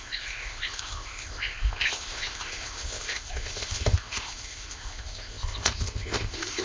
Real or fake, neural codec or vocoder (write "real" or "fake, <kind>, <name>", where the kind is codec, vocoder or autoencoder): fake, codec, ZipCodec